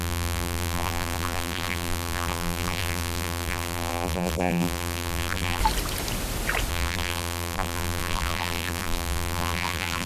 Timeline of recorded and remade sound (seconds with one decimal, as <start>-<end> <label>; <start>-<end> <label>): 0.0-5.6 remade; 5.6-6.7 recorded; 6.7-10.1 remade